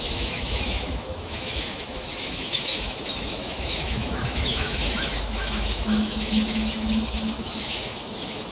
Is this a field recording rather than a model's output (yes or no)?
no